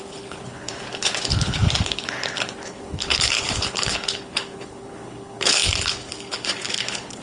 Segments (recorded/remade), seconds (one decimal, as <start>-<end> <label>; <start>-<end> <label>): 0.0-7.2 remade